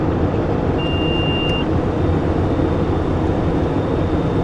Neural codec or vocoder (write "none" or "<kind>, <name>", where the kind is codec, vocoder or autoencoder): none